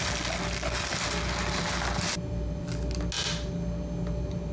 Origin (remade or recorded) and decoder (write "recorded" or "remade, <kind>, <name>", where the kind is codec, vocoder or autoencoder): recorded